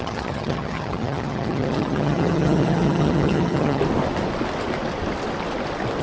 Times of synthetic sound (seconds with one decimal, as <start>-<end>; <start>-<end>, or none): 0.0-3.8